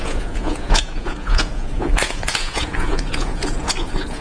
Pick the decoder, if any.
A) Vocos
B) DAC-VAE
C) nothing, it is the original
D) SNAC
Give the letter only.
A